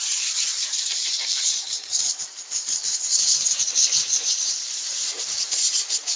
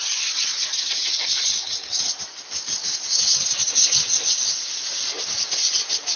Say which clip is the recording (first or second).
second